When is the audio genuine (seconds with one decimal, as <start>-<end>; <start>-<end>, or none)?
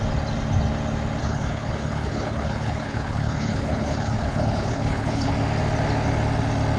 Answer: 0.0-1.2; 5.3-6.8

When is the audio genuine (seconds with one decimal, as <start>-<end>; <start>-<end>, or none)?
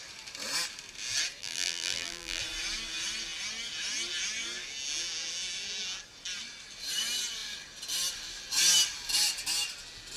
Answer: 0.0-1.4; 2.4-10.2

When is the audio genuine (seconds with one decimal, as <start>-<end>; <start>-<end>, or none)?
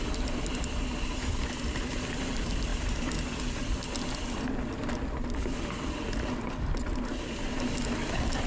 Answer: 0.0-8.5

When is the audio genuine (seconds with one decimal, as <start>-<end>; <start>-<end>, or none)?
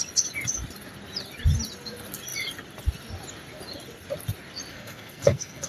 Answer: 0.0-4.7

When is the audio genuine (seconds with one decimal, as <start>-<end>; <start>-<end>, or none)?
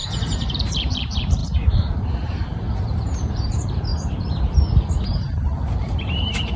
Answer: 0.0-0.5; 3.9-5.1